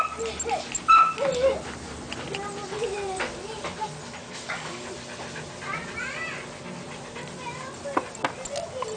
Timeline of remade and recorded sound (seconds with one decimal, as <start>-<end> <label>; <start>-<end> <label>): 0.0-4.2 recorded; 4.2-4.9 remade; 4.9-9.0 recorded